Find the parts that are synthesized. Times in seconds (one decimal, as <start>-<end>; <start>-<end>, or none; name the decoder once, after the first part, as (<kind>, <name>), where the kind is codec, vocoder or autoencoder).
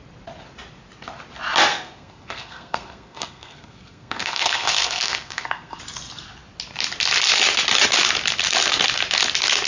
1.7-5.8 (codec, SNAC)